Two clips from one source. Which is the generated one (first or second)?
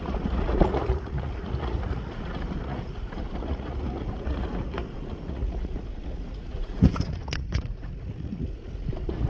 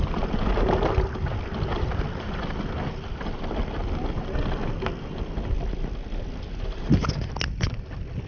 first